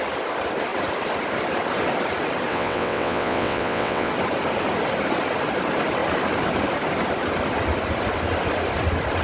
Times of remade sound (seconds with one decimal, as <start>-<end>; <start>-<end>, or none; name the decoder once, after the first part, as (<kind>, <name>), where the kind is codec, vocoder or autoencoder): 2.5-4.1 (vocoder, WaveNeXt)